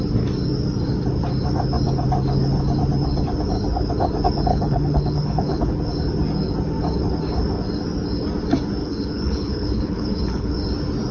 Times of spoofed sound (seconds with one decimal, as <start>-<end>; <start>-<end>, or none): 4.5-5.7; 8.8-10.5